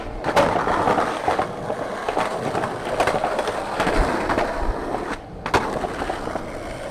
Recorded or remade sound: recorded